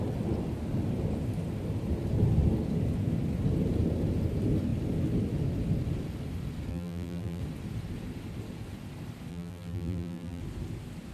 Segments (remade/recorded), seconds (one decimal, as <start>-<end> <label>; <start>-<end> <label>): 0.0-6.7 recorded; 6.7-7.4 remade; 7.4-9.3 recorded; 9.3-10.4 remade; 10.4-11.1 recorded